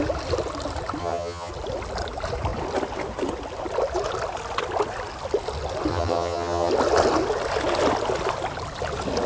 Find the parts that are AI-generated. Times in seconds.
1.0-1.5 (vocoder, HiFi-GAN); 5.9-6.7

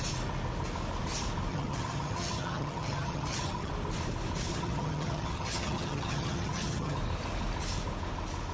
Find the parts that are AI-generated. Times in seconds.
1.5-3.7 (vocoder, HiFi-GAN); 4.5-7.0

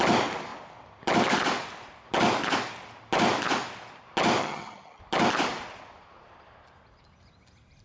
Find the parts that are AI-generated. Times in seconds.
4.4-5.0 (vocoder, HiFi-GAN)